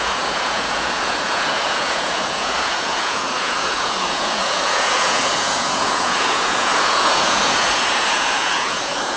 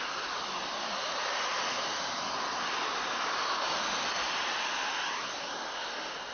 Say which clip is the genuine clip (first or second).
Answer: second